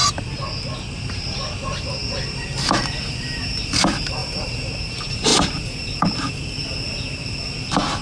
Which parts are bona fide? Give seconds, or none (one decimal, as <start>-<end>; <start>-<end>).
0.0-0.9